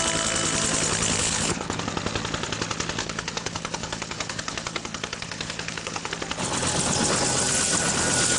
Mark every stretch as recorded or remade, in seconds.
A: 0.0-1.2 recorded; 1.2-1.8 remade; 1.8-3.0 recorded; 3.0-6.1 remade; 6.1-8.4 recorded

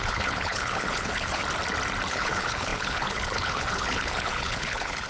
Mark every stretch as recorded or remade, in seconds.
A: 0.0-1.4 remade; 1.4-2.1 recorded; 2.1-5.1 remade

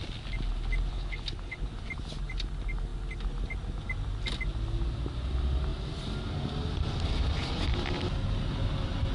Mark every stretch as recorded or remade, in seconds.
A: 0.0-0.9 recorded; 0.9-1.7 remade; 1.7-9.1 recorded

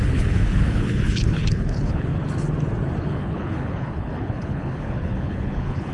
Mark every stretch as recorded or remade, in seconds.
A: 0.0-2.1 remade; 2.1-3.0 recorded; 3.0-5.9 remade